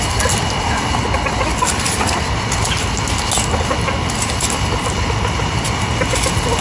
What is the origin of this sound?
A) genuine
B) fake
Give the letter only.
A